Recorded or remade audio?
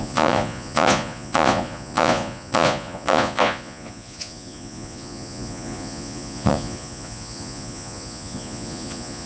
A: remade